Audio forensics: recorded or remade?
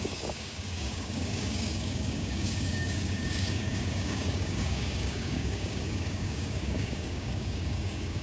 remade